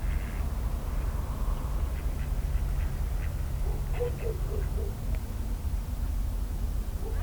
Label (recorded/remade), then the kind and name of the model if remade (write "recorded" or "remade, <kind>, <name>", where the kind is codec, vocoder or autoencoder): recorded